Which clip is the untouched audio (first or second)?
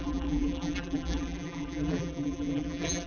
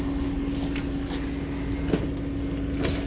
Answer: second